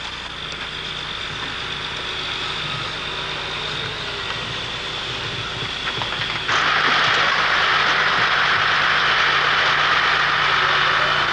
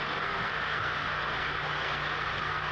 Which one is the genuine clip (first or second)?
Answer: first